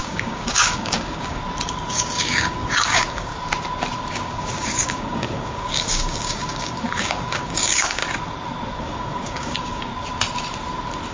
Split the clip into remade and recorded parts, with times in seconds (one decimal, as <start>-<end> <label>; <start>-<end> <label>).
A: 0.0-1.4 remade; 1.4-1.9 recorded; 1.9-3.3 remade; 3.3-4.1 recorded; 4.1-8.0 remade; 8.0-8.8 recorded; 8.8-9.9 remade; 9.9-11.1 recorded